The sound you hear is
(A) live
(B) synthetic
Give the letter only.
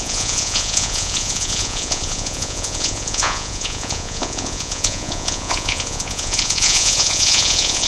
B